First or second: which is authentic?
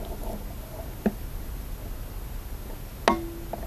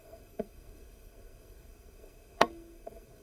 first